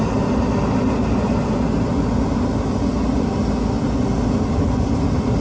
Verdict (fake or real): real